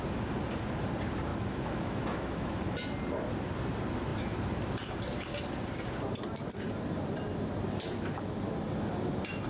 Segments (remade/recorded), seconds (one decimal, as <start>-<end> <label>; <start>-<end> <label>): 0.0-1.3 recorded; 1.3-2.6 remade; 2.6-9.5 recorded